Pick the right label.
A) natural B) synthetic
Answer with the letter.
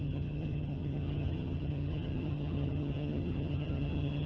B